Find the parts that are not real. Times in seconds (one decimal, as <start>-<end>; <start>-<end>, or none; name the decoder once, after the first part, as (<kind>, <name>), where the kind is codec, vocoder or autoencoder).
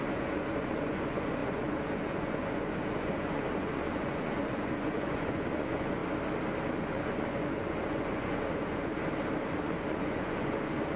0.0-6.0 (vocoder, Vocos); 6.8-8.9; 9.4-11.0